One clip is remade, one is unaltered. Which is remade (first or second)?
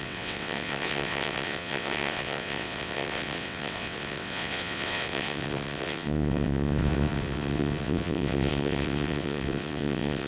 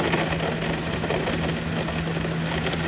first